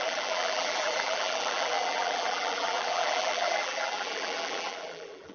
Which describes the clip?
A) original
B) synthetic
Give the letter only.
B